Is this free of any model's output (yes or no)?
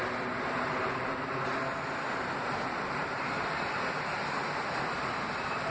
yes